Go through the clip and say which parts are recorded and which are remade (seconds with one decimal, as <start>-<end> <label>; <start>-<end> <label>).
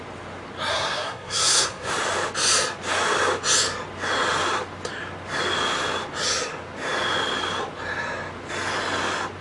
0.0-0.7 recorded; 0.7-1.9 remade; 1.9-9.4 recorded